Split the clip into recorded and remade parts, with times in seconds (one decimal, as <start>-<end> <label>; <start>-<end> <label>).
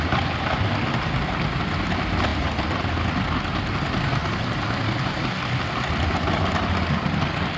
0.0-7.6 recorded